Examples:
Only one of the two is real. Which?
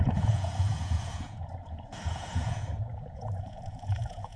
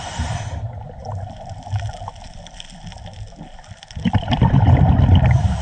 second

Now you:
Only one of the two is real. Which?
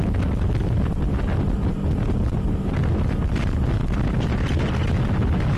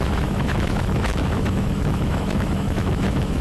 first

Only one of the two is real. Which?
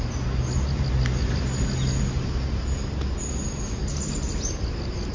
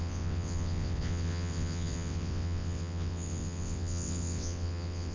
first